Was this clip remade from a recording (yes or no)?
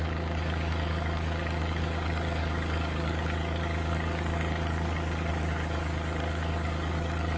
yes